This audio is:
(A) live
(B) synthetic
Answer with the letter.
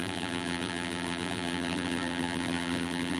B